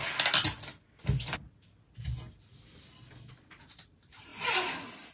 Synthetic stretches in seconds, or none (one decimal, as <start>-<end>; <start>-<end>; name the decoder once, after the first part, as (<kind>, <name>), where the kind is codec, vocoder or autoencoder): 3.1-5.1 (vocoder, BigVGAN v2)